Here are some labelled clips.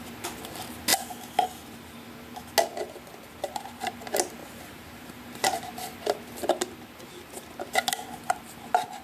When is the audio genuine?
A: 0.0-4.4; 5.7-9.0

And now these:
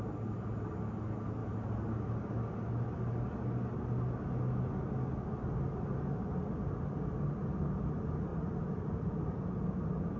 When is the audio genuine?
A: 0.0-8.3; 9.4-10.2

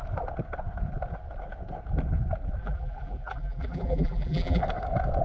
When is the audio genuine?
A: 0.0-2.6; 4.6-5.2

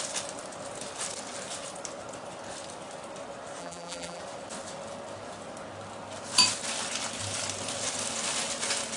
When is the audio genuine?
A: 0.0-3.6; 4.2-9.0

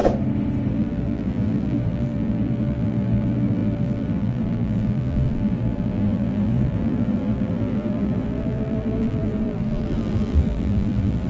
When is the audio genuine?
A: 0.0-0.7